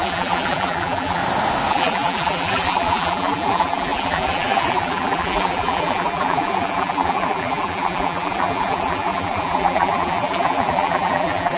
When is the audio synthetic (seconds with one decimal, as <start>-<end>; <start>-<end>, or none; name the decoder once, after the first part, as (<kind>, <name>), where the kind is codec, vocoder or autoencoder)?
0.0-1.2 (vocoder, BigVGAN v2); 1.7-11.6